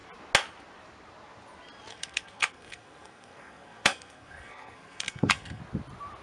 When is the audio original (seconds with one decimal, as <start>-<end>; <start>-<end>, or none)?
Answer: 0.0-1.9; 5.6-6.2